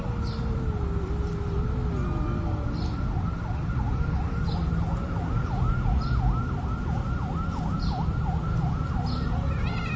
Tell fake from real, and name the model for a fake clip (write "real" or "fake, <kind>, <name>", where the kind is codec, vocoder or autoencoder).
real